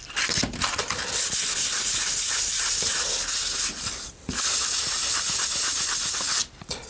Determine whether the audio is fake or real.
real